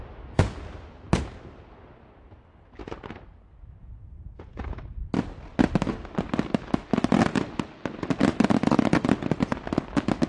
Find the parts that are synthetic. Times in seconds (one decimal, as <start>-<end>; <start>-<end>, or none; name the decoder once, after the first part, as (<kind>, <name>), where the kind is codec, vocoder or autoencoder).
3.8-4.6 (vocoder, Vocos)